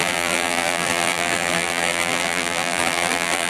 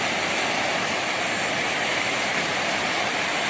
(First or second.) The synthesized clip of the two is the first